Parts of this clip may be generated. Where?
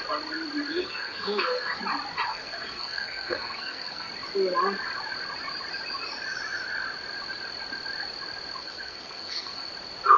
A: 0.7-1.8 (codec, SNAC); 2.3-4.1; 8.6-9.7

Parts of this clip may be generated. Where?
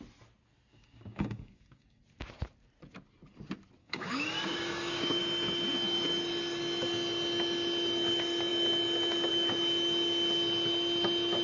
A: 0.7-2.0 (codec, DAC); 3.8-5.2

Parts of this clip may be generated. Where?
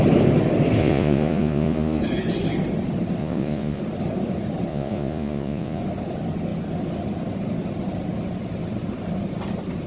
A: 0.8-2.0 (vocoder, Vocos); 3.2-3.8; 4.7-5.8